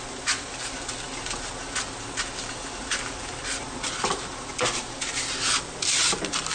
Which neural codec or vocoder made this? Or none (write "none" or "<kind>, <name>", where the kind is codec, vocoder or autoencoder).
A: none